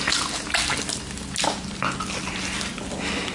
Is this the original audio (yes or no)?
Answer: yes